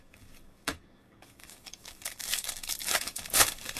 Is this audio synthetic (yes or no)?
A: yes